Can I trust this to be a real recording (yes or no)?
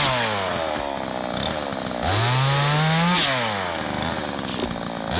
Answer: yes